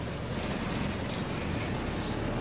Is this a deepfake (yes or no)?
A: no